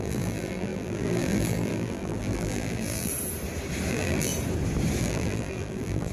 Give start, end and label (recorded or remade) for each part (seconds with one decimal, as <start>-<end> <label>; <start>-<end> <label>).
0.0-3.1 remade; 3.1-3.9 recorded; 3.9-4.3 remade; 4.3-5.0 recorded; 5.0-6.1 remade